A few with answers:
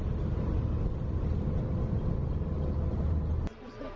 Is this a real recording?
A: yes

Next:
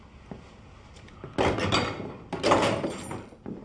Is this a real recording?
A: yes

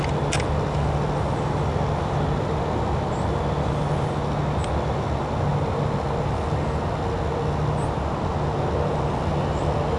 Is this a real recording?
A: yes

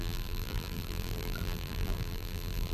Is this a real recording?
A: no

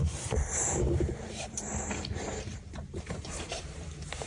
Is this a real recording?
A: no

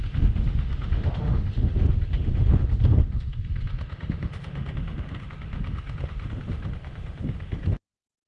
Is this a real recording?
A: no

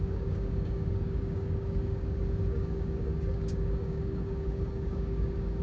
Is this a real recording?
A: no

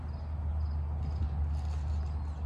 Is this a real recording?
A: yes